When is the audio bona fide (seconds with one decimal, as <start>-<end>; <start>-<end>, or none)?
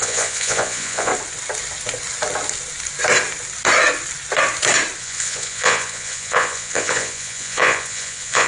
1.1-5.0